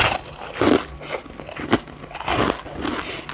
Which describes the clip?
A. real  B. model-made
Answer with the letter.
A